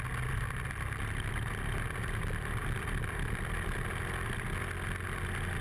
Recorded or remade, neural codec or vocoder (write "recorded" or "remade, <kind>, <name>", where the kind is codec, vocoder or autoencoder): recorded